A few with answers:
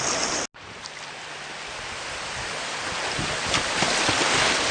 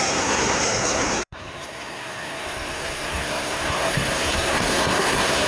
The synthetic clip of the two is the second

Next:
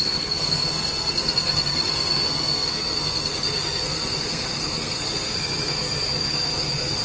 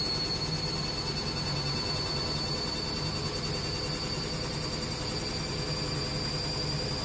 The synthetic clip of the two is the first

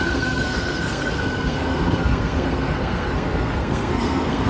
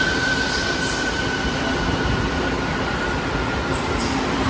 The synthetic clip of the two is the first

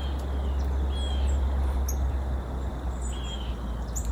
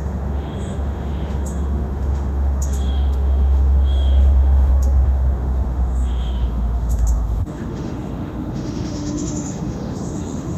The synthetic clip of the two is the second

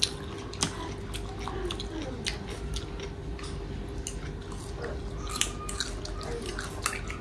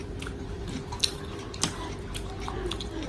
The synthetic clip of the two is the second